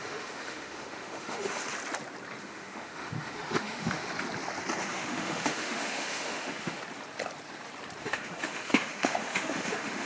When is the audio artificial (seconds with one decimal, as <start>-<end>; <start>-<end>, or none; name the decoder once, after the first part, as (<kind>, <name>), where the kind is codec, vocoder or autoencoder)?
0.0-1.6 (autoencoder, DAC-VAE); 2.4-4.1; 4.8-6.8; 8.0-10.1